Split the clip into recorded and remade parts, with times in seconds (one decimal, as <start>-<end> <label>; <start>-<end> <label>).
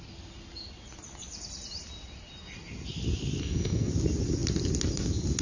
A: 0.0-3.4 recorded; 3.4-3.9 remade; 3.9-5.4 recorded